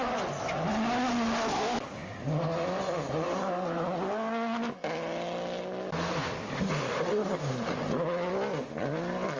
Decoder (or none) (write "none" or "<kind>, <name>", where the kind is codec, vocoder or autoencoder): none